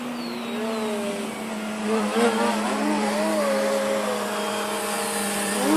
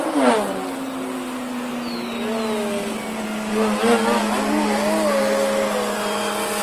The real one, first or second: second